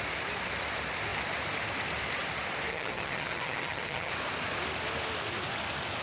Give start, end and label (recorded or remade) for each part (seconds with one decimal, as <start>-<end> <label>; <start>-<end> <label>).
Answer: 0.0-2.7 recorded; 2.7-4.1 remade; 4.1-6.0 recorded